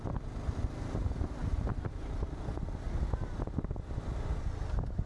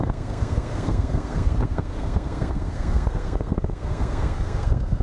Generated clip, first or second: second